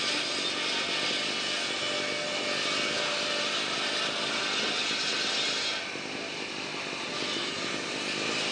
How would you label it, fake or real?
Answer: real